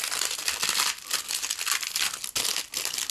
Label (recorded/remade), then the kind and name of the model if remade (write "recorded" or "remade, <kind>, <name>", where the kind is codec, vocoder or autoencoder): recorded